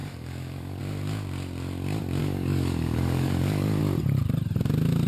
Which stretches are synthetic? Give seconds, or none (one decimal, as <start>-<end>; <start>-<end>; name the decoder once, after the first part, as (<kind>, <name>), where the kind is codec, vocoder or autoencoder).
0.0-0.8 (codec, DAC); 2.2-3.8